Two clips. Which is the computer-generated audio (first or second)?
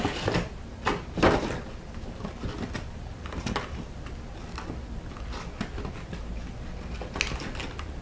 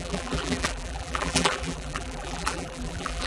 second